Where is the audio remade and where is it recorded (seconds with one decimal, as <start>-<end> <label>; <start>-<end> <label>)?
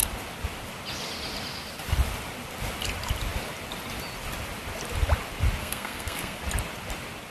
0.0-5.6 recorded; 5.6-6.4 remade; 6.4-7.3 recorded